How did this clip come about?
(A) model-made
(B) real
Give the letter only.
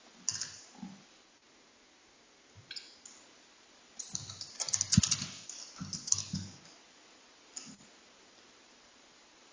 B